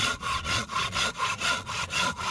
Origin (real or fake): fake